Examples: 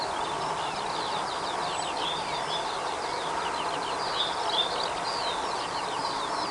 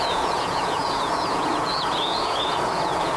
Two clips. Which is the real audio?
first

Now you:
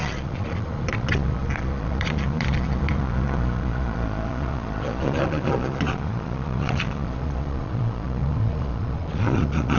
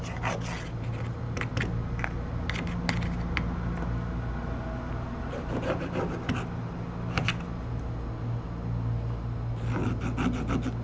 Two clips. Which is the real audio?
second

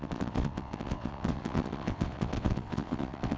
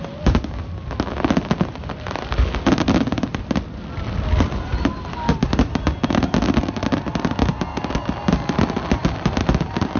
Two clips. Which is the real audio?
second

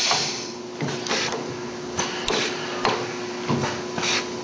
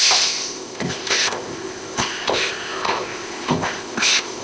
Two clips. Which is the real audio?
first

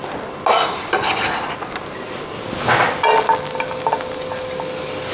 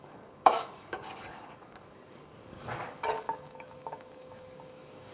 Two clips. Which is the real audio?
first